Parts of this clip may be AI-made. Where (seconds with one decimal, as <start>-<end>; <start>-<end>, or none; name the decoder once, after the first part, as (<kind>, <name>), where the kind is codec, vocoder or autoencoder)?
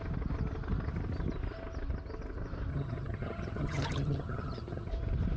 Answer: 2.7-4.9 (vocoder, HiFi-GAN)